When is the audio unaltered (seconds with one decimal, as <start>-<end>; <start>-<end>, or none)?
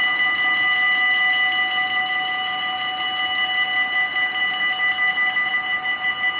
0.0-6.4